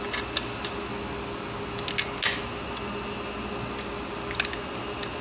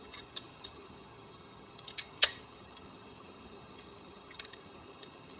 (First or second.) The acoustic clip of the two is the first